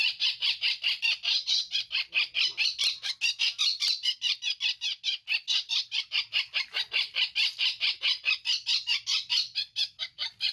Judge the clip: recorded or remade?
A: recorded